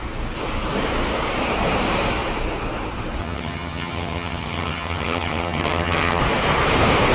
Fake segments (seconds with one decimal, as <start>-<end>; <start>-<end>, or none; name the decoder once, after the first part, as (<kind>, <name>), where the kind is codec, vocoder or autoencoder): 3.2-6.2 (vocoder, HiFi-GAN)